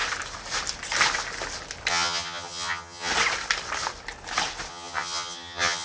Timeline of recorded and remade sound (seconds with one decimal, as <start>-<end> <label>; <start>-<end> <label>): 0.0-1.9 recorded; 1.9-3.1 remade; 3.1-4.7 recorded; 4.7-5.8 remade